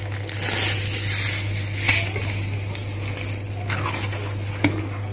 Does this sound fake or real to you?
real